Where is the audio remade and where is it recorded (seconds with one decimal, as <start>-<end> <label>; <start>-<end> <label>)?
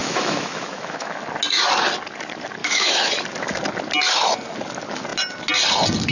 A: 0.0-1.2 remade; 1.2-2.6 recorded; 2.6-3.1 remade; 3.1-6.1 recorded